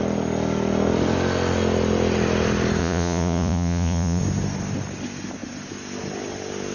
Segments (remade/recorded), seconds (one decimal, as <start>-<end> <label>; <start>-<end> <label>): 0.0-2.8 recorded; 2.8-4.2 remade; 4.2-6.7 recorded